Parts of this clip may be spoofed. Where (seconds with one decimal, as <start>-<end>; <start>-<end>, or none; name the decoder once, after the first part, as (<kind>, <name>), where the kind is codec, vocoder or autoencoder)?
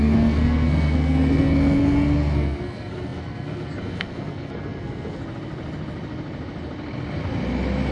0.0-5.2 (codec, SNAC)